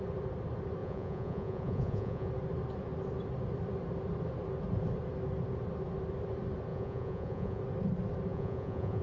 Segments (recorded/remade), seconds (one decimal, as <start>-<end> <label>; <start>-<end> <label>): 0.0-0.8 recorded; 0.8-2.3 remade; 2.3-6.7 recorded; 6.7-7.6 remade; 7.6-8.3 recorded; 8.3-9.0 remade